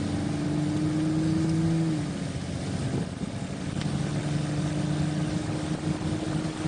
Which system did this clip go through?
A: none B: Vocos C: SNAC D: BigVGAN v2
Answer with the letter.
A